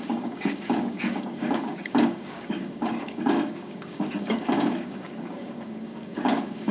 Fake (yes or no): yes